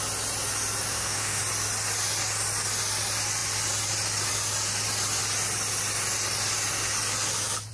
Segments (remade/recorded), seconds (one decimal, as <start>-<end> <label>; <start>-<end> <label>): 0.0-0.9 recorded; 0.9-1.4 remade; 1.4-7.7 recorded